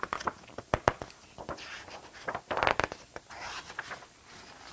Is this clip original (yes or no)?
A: yes